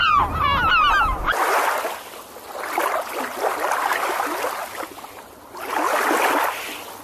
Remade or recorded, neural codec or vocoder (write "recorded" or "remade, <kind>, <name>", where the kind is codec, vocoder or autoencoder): recorded